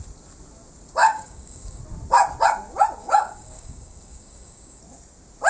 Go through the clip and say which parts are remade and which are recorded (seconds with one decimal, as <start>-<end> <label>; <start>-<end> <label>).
0.0-1.0 recorded; 1.0-1.8 remade; 1.8-3.0 recorded; 3.0-4.8 remade; 4.8-5.5 recorded

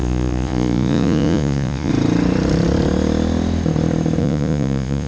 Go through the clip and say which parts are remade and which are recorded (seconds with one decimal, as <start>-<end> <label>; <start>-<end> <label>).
0.0-1.9 remade; 1.9-4.2 recorded; 4.2-5.1 remade

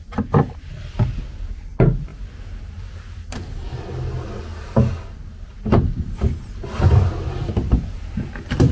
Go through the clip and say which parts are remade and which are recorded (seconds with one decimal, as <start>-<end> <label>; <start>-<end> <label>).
0.0-8.7 recorded

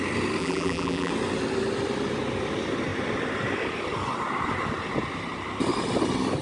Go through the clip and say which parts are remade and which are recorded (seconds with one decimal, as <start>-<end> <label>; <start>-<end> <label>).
0.0-0.4 recorded; 0.4-1.1 remade; 1.1-6.4 recorded

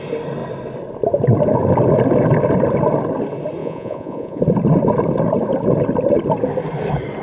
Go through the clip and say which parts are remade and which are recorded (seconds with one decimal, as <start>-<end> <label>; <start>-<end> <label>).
0.0-3.6 recorded; 3.6-4.4 remade; 4.4-7.2 recorded

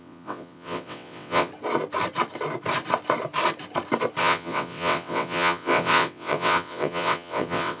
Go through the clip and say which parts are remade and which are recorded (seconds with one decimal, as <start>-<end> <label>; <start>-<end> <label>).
0.0-1.5 remade; 1.5-4.2 recorded; 4.2-7.8 remade

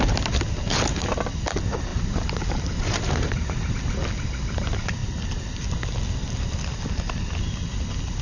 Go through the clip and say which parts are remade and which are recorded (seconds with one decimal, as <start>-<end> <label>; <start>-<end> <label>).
0.0-1.9 recorded; 1.9-3.7 remade; 3.7-8.2 recorded

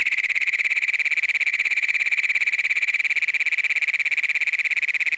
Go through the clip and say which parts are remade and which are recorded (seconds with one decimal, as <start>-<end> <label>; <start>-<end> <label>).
0.0-0.9 remade; 0.9-1.5 recorded; 1.5-3.0 remade; 3.0-5.2 recorded